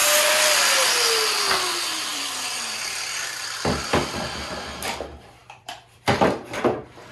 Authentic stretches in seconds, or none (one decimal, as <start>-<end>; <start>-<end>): 0.9-2.1; 4.0-5.4; 6.6-7.1